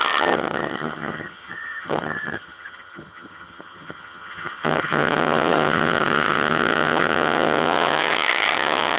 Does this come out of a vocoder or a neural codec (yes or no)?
yes